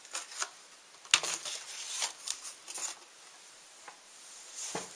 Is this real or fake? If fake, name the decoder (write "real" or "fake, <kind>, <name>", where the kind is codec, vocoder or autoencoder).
real